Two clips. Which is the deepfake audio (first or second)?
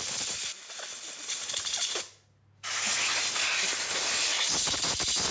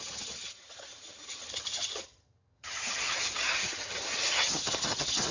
second